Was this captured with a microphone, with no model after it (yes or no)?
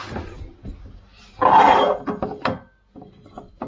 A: yes